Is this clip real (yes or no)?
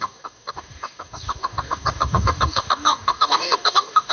no